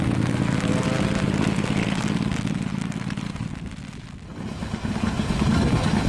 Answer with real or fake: real